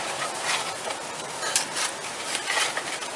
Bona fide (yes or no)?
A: no